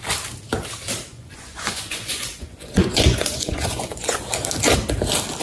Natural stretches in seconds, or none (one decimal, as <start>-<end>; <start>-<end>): 0.0-1.1; 4.3-5.4